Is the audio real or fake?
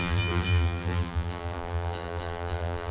fake